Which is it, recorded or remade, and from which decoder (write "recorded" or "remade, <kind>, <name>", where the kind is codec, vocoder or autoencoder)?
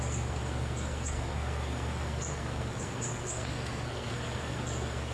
remade, codec, SNAC